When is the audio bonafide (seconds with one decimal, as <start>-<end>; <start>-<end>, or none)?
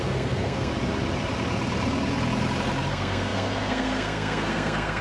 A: 0.7-2.9